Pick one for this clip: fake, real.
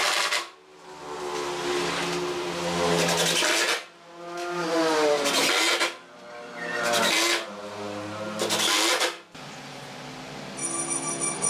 real